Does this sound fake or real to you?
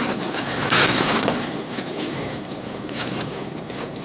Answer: fake